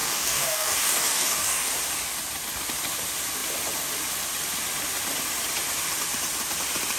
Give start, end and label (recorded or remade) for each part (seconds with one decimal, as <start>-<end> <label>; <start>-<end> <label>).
0.0-1.7 remade; 1.7-7.0 recorded

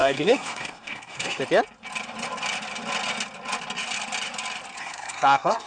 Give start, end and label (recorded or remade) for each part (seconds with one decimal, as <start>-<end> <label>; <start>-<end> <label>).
0.0-1.4 remade; 1.4-4.8 recorded; 4.8-5.7 remade

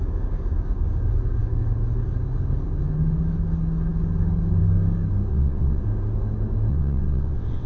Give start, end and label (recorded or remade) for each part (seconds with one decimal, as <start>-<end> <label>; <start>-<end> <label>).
0.0-5.3 recorded; 5.3-5.8 remade; 5.8-6.7 recorded; 6.7-7.7 remade

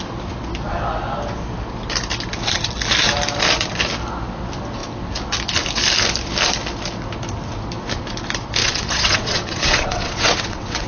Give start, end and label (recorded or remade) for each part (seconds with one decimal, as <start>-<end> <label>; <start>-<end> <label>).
0.0-8.6 recorded; 8.6-10.9 remade

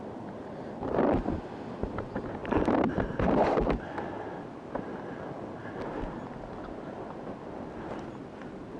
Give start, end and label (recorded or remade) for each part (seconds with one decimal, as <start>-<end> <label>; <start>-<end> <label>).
0.0-2.4 recorded; 2.4-3.8 remade; 3.8-8.8 recorded

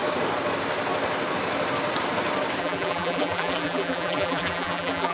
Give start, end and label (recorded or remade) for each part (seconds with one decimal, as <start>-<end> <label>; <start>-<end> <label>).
0.0-2.6 recorded; 2.6-5.1 remade

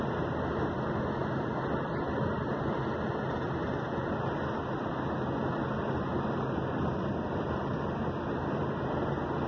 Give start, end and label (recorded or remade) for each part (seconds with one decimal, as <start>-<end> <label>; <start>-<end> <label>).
0.0-9.5 recorded

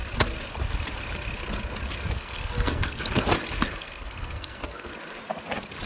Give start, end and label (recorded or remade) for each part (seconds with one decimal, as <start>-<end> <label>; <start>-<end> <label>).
0.0-2.1 recorded; 2.1-3.1 remade; 3.1-3.8 recorded; 3.8-4.9 remade; 4.9-5.9 recorded